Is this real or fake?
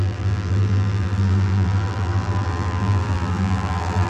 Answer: fake